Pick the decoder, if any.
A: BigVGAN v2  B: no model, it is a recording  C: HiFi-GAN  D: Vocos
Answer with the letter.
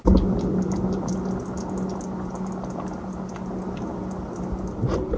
B